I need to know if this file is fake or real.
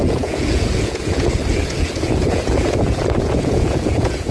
fake